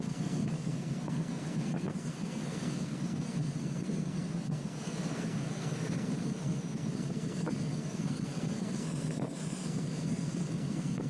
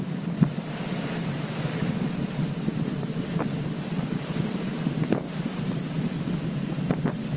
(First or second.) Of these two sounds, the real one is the second